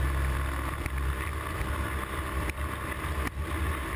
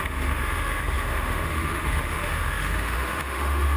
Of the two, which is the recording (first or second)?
first